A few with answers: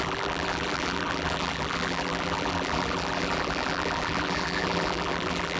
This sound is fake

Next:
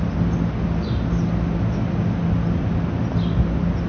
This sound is real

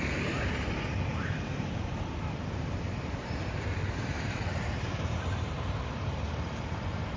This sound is fake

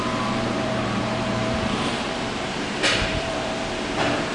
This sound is fake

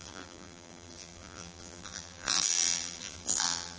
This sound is fake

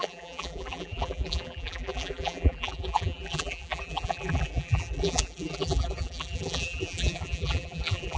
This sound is fake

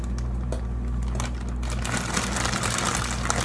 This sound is real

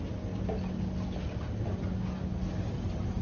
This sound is real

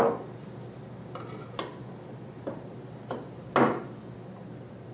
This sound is real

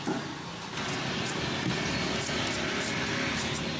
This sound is real